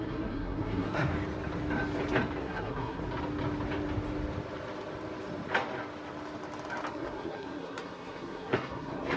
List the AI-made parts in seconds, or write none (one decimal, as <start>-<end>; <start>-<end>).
0.0-1.1; 2.4-3.0; 6.9-9.2